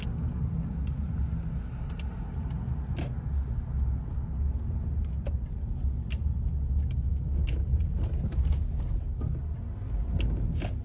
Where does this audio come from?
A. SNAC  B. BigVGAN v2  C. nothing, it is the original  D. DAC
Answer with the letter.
C